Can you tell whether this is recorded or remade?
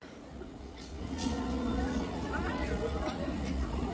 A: remade